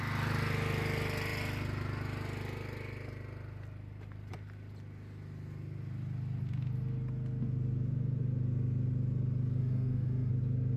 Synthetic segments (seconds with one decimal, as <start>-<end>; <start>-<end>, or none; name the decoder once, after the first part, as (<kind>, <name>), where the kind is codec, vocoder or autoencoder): 9.6-10.3 (autoencoder, DAC-VAE)